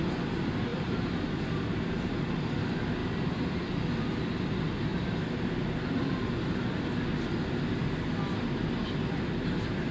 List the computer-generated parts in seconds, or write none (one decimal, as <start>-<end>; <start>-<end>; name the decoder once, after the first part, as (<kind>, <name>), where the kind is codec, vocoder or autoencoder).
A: 0.7-2.5 (vocoder, BigVGAN v2); 3.0-3.7